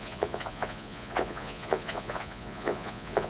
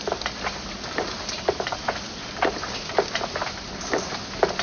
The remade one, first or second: first